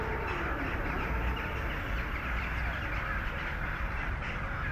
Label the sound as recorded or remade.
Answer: recorded